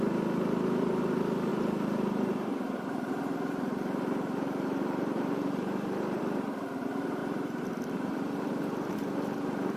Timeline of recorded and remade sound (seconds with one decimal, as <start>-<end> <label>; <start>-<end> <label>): 0.0-1.5 recorded; 1.5-6.2 remade; 6.2-9.8 recorded